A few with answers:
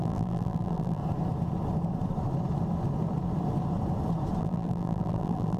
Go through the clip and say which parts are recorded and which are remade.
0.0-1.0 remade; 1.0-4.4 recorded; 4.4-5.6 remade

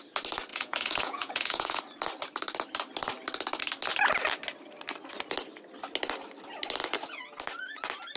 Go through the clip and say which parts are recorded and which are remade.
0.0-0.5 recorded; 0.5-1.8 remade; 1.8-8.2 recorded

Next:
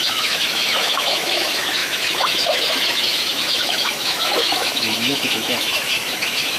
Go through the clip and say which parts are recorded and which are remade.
0.0-6.6 remade